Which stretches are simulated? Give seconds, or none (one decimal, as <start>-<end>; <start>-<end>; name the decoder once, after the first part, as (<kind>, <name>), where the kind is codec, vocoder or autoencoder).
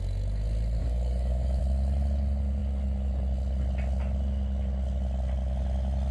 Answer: 0.8-1.6 (codec, DAC)